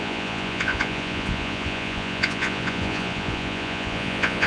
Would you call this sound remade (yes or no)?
yes